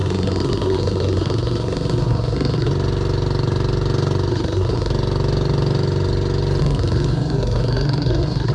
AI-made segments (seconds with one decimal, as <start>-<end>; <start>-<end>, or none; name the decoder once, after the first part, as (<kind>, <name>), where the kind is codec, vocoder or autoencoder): 0.0-2.7 (codec, SNAC); 4.3-4.9; 6.6-8.5